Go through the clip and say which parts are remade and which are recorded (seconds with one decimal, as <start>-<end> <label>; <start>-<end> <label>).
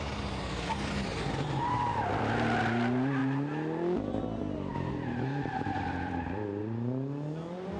0.0-1.1 recorded; 1.1-2.2 remade; 2.2-4.7 recorded; 4.7-6.6 remade; 6.6-7.8 recorded